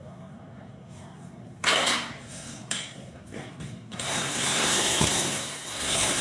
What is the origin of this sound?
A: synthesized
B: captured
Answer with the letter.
A